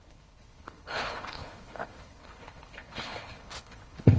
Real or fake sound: fake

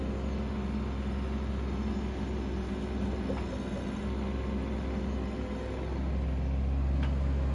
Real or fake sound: real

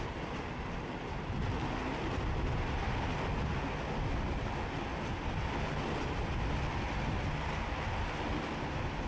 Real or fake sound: real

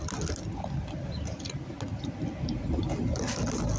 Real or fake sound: real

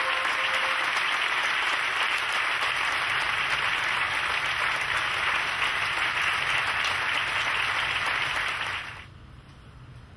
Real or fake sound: real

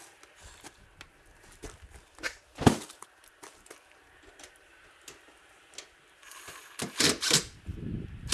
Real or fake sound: real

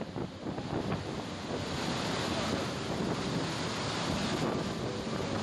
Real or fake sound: real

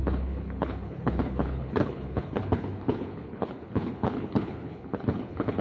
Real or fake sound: fake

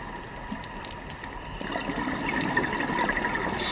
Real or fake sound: real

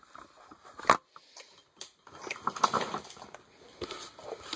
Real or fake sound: real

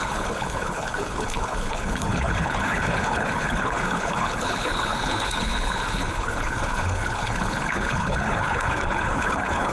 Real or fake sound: fake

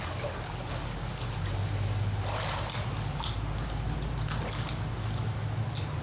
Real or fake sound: real